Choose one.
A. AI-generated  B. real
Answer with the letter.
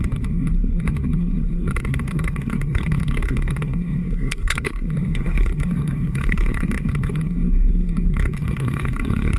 A